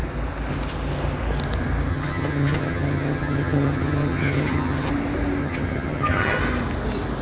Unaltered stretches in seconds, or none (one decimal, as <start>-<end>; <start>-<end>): 0.0-1.9; 4.9-5.4; 6.4-7.2